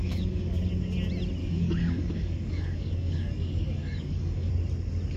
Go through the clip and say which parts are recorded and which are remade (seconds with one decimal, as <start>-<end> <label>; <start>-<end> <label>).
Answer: 0.0-0.6 remade; 0.6-1.4 recorded; 1.4-4.5 remade; 4.5-5.2 recorded